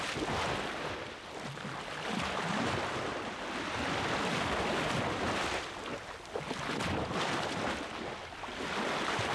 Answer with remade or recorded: recorded